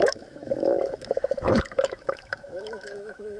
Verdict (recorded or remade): remade